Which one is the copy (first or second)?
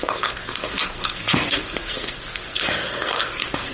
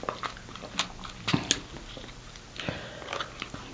first